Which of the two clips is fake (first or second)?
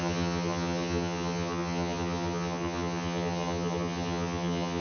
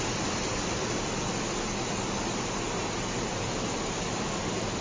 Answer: first